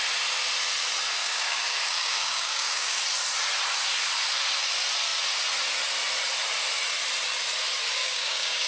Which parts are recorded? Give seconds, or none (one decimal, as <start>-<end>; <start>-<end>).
0.0-1.2; 3.0-8.0